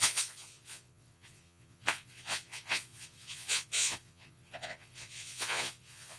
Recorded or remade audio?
remade